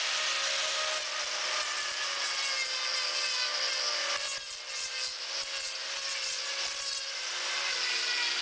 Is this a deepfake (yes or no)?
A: no